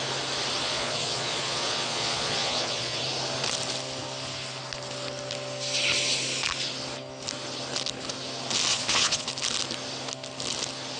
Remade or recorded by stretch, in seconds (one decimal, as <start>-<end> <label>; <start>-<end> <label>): 0.0-0.6 recorded; 0.6-3.0 remade; 3.0-8.7 recorded; 8.7-9.3 remade; 9.3-11.0 recorded